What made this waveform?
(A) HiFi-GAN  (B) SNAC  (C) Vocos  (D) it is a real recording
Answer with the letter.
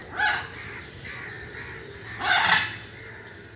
D